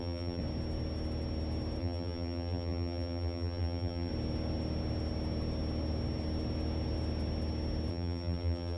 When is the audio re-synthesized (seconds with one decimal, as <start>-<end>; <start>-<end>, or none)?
0.0-0.4; 1.8-4.1; 7.9-8.8